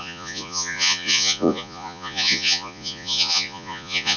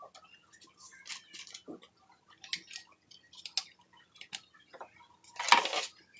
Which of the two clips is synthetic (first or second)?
first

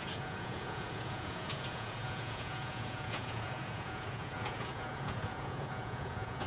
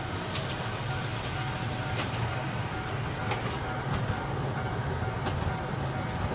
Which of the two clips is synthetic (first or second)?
first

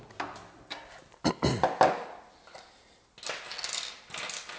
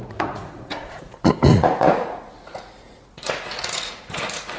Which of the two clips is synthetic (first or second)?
second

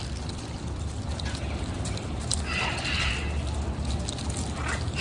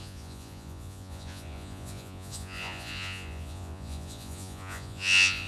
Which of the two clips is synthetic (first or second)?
second